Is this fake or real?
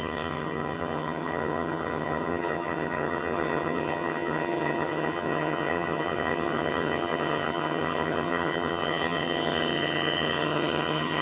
fake